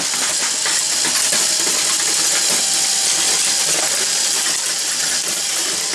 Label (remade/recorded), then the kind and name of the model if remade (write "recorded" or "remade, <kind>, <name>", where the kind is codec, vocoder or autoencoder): recorded